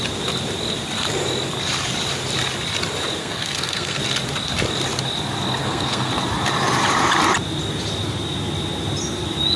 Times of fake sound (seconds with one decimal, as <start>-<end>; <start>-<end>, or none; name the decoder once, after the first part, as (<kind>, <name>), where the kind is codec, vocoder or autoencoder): 3.2-4.0 (codec, SNAC); 5.6-6.1